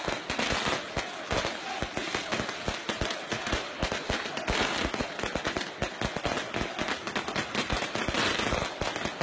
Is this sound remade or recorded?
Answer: recorded